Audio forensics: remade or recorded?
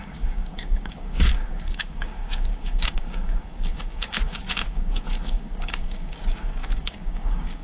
remade